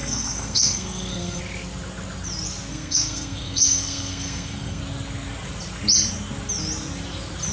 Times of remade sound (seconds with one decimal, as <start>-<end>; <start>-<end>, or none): 0.0-1.4; 2.7-4.8